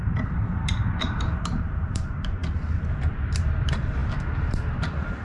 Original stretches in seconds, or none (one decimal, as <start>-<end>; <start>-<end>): 2.4-3.3